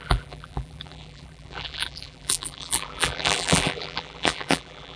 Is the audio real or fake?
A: fake